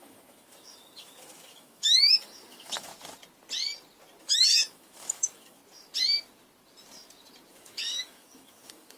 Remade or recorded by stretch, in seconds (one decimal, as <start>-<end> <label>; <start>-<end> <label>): 0.0-2.9 remade; 2.9-4.2 recorded; 4.2-5.6 remade; 5.6-7.5 recorded; 7.5-9.0 remade